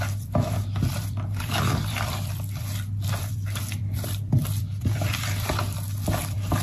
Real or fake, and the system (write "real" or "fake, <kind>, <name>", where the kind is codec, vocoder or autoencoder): fake, vocoder, BigVGAN v2